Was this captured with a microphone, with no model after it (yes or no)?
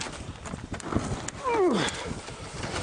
yes